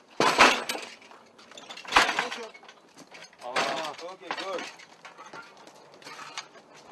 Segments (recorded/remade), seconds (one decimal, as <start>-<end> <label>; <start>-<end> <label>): 0.0-3.2 recorded; 3.2-4.0 remade; 4.0-6.9 recorded